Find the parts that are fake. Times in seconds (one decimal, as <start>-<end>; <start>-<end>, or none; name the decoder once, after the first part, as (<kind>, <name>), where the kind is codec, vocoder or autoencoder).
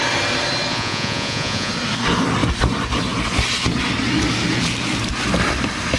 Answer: 0.7-1.7 (vocoder, Vocos)